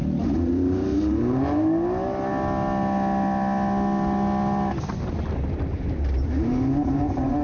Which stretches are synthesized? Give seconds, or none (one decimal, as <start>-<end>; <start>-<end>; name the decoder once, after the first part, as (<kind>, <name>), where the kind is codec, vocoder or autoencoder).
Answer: 0.0-2.3 (vocoder, BigVGAN v2); 5.7-7.4